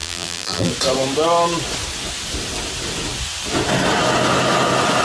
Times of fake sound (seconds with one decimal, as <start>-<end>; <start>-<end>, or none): 0.0-0.7